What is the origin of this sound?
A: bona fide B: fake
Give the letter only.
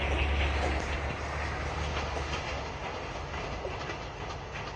A